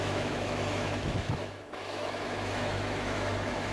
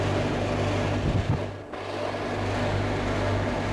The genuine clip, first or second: second